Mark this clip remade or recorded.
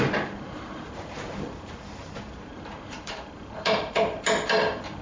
remade